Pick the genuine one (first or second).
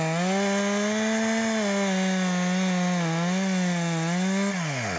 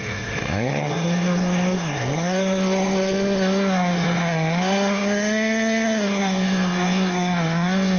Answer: first